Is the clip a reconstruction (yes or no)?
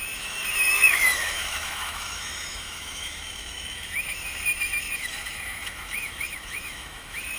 yes